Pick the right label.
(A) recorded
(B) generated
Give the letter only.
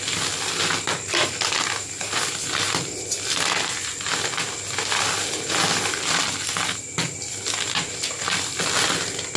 A